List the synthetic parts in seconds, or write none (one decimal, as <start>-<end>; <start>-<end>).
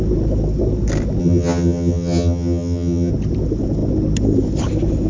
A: 1.2-3.1